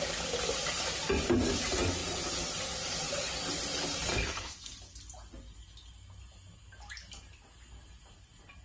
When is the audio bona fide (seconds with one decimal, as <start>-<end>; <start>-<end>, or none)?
0.0-4.1; 4.7-8.6